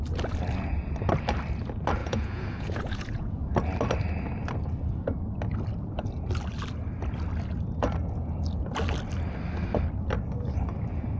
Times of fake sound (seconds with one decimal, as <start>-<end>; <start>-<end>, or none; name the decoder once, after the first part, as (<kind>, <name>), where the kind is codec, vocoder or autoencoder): 2.0-3.5 (vocoder, Vocos)

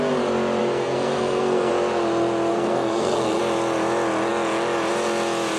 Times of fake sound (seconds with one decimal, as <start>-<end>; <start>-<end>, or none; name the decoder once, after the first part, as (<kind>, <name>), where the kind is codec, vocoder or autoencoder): 0.6-1.7 (codec, SNAC); 2.5-3.4